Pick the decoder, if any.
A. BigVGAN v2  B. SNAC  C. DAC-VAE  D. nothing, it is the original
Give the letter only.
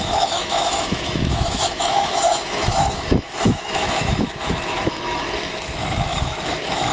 C